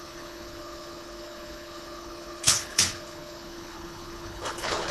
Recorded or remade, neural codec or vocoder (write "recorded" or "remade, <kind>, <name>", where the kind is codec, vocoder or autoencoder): remade, codec, HILCodec